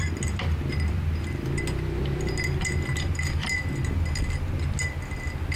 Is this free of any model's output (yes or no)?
yes